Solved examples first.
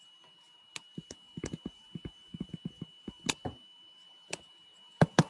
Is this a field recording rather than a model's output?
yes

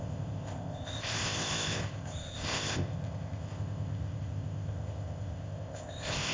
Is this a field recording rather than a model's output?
no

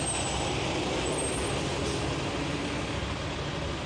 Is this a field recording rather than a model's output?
yes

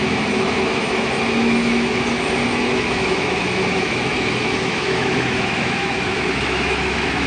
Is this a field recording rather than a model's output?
no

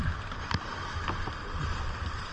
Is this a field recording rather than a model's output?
yes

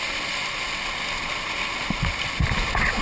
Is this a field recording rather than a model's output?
yes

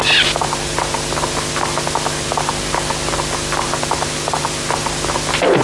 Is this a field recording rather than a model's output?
yes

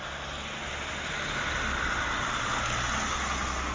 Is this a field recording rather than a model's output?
yes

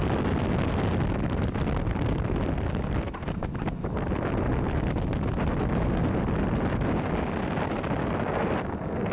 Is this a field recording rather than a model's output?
yes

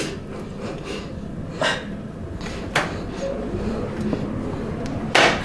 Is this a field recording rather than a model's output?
yes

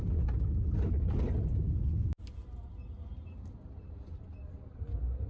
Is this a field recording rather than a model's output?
yes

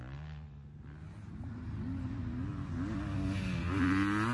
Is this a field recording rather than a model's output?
yes